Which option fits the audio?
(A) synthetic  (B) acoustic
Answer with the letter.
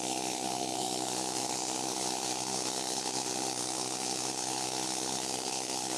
A